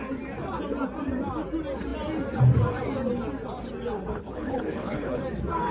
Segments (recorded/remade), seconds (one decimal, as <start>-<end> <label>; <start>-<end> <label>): 0.0-4.1 recorded; 4.1-5.2 remade; 5.2-5.7 recorded